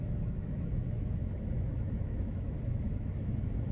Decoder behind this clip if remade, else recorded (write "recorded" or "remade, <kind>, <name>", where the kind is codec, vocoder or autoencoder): remade, autoencoder, DAC-VAE